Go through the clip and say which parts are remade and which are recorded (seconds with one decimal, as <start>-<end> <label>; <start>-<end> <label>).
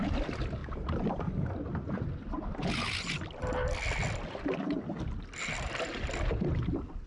0.0-7.1 recorded